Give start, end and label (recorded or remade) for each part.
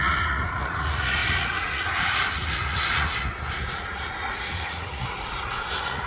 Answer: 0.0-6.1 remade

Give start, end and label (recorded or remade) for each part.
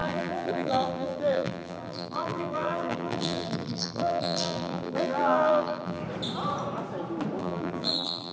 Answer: 0.0-6.0 remade; 6.0-7.4 recorded; 7.4-8.3 remade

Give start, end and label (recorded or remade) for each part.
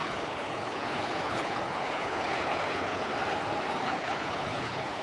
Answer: 0.0-3.1 remade; 3.1-3.7 recorded; 3.7-5.0 remade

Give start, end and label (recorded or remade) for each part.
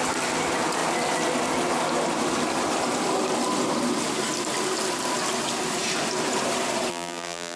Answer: 0.0-6.9 recorded; 6.9-7.6 remade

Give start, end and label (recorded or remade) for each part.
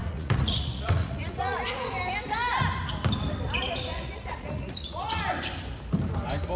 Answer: 0.0-1.9 remade; 1.9-3.9 recorded; 3.9-5.2 remade; 5.2-6.6 recorded